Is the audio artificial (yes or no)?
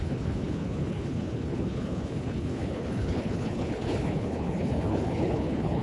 yes